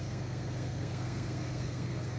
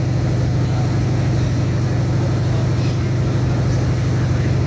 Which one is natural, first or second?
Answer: second